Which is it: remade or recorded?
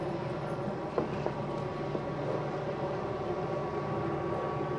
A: recorded